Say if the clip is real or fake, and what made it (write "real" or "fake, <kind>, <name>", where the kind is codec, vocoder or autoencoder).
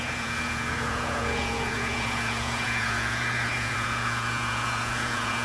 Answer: fake, vocoder, Vocos